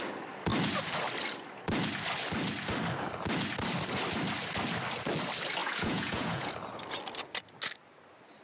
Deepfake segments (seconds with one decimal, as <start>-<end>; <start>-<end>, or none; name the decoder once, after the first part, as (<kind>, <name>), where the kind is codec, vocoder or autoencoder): 5.6-6.5 (vocoder, Vocos)